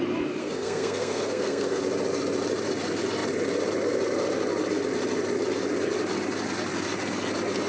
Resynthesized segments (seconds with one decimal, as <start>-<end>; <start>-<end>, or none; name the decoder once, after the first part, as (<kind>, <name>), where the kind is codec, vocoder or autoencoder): 0.4-1.8 (codec, SNAC)